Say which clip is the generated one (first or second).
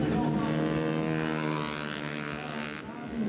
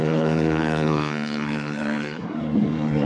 second